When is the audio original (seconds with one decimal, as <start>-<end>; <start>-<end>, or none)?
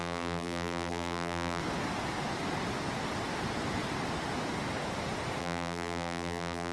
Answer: 1.6-5.4